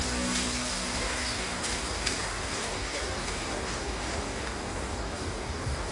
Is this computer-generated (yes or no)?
yes